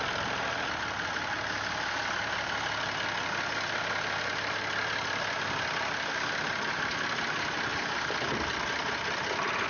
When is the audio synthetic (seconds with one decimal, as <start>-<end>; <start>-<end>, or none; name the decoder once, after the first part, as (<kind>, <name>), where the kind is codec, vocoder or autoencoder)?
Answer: none